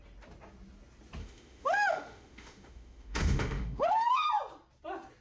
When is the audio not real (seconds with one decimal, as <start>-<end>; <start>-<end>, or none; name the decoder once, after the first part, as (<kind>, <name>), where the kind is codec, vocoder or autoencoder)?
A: 1.2-4.3 (autoencoder, DAC-VAE)